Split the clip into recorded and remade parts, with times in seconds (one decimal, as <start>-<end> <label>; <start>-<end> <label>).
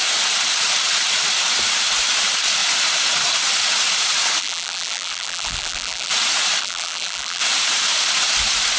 0.0-4.4 recorded; 4.4-6.1 remade; 6.1-6.6 recorded; 6.6-7.4 remade; 7.4-8.8 recorded